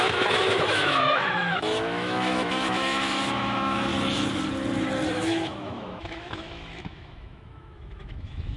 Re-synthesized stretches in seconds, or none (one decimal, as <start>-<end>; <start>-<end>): 0.0-3.9; 5.1-8.6